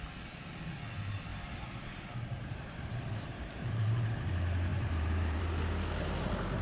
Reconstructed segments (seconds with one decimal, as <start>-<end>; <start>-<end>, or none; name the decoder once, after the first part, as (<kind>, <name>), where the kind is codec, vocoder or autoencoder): 1.3-4.2 (vocoder, BigVGAN v2); 4.7-5.4